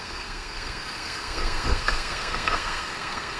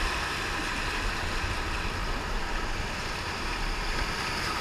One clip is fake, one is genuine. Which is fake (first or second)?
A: first